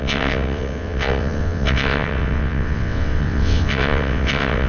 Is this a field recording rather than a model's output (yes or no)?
no